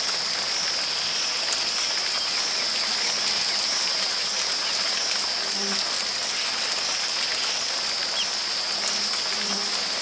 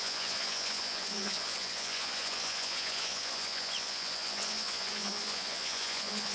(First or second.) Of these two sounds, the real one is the first